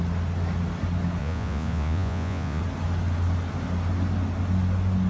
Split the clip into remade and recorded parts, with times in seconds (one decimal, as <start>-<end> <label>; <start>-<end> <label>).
0.0-1.2 recorded; 1.2-2.6 remade; 2.6-5.1 recorded